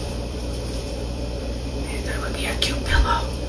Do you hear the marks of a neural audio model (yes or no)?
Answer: yes